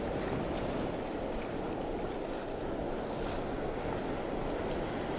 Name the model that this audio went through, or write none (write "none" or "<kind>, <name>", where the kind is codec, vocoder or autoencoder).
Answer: none